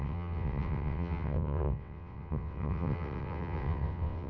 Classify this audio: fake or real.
fake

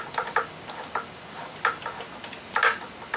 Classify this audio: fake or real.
real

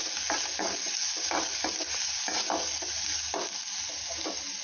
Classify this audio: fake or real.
real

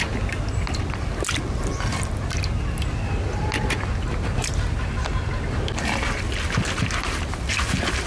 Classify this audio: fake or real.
real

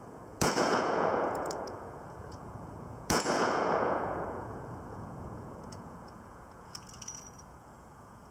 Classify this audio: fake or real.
fake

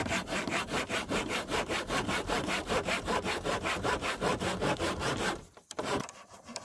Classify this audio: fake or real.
fake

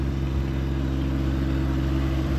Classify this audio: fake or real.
real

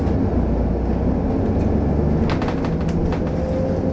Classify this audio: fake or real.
real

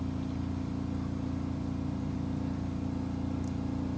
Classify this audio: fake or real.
real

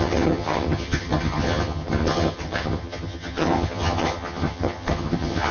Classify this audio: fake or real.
fake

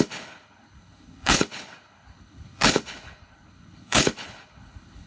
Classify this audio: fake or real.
fake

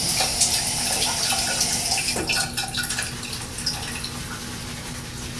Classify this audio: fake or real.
real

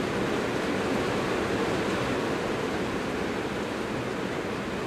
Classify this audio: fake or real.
real